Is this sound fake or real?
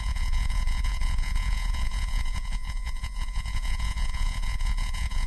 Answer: fake